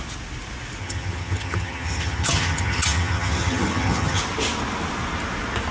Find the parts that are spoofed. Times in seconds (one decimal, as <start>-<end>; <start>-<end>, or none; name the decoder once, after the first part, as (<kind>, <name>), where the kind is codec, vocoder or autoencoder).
0.8-4.2 (vocoder, HiFi-GAN)